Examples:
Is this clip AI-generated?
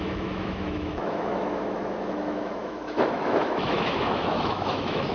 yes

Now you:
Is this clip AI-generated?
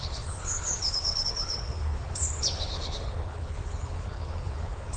yes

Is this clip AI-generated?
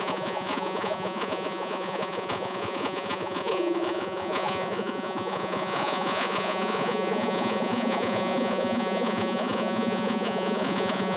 yes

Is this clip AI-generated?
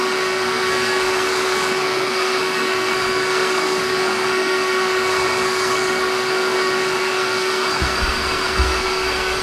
yes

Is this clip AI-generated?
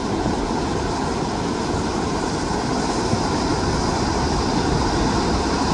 no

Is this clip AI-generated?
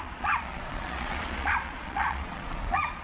yes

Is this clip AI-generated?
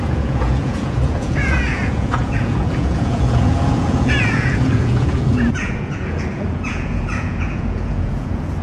yes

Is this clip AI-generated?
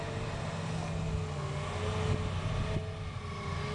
no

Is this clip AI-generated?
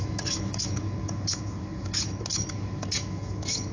yes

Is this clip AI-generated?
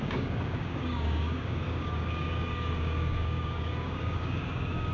yes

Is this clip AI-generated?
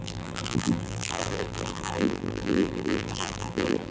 yes